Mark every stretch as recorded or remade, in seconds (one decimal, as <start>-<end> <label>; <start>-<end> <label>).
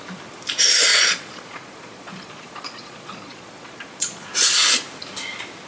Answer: 0.0-0.9 recorded; 0.9-4.3 remade; 4.3-5.7 recorded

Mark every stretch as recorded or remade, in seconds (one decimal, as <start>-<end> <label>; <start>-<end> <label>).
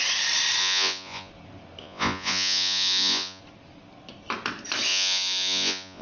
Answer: 0.0-0.6 recorded; 0.6-1.3 remade; 1.3-1.8 recorded; 1.8-3.4 remade; 3.4-4.9 recorded; 4.9-6.0 remade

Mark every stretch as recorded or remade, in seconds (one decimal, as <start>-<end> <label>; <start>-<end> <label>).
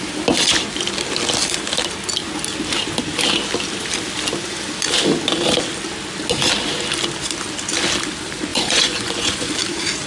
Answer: 0.0-8.5 recorded; 8.5-9.5 remade; 9.5-10.1 recorded